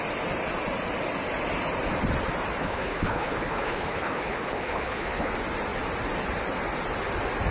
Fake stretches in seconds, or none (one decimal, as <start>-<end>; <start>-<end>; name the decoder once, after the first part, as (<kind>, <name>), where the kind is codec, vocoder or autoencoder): 2.6-5.3 (codec, HILCodec)